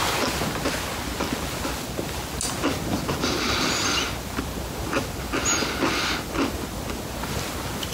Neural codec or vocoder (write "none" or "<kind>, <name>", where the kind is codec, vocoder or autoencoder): none